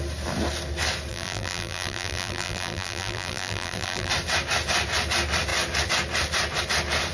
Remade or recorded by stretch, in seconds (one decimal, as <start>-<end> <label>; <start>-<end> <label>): 0.0-1.1 recorded; 1.1-4.1 remade; 4.1-7.1 recorded